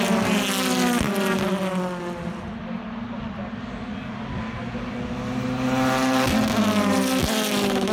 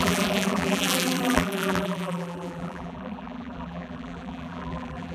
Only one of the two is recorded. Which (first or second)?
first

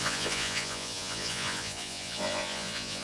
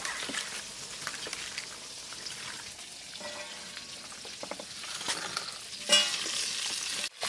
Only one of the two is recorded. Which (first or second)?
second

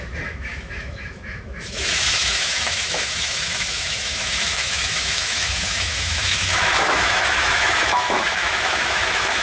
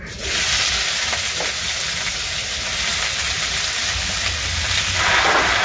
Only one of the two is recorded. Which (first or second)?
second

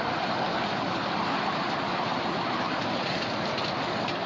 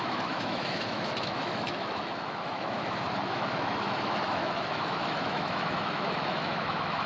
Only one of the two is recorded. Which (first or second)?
first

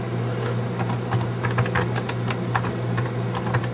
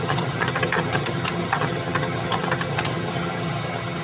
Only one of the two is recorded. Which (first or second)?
first